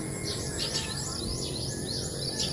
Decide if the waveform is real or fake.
real